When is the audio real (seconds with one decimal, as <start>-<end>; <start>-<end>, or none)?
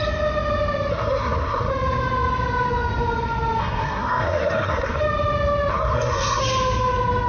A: 0.0-0.9; 1.7-3.6; 5.0-5.7; 6.4-7.3